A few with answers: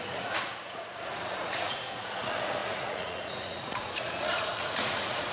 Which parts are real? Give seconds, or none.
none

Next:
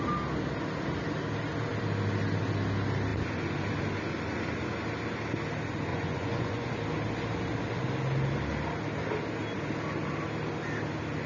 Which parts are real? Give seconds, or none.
0.0-5.9; 6.7-11.3